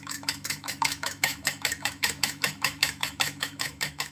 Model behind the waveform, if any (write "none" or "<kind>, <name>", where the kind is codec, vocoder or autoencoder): autoencoder, DAC-VAE